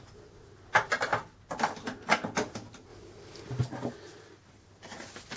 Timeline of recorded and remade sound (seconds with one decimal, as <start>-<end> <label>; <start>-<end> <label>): 0.0-5.4 recorded